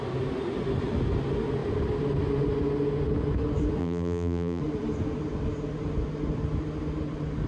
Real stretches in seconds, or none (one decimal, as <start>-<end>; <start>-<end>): 0.0-3.8; 4.6-7.5